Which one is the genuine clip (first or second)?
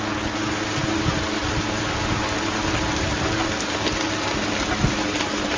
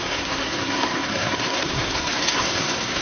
first